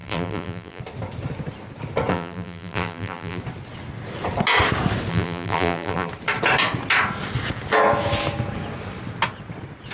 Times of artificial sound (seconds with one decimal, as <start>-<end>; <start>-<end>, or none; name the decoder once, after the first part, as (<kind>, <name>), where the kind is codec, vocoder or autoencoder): 0.0-0.8 (vocoder, BigVGAN v2); 2.1-3.4; 5.1-6.1